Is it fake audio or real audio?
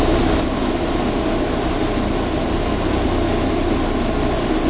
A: real